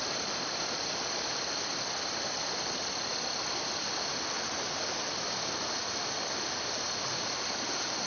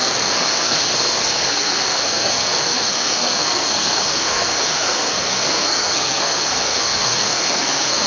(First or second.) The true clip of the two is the first